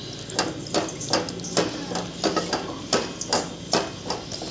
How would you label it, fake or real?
real